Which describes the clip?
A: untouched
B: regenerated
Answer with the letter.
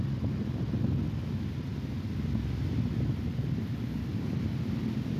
A